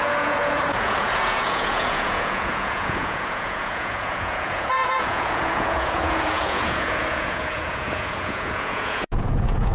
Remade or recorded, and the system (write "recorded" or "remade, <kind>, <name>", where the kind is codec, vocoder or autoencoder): remade, vocoder, Vocos